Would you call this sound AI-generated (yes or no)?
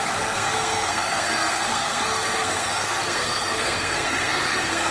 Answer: yes